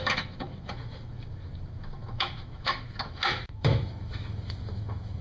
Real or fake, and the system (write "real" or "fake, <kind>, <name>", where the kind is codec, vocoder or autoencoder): fake, autoencoder, DAC-VAE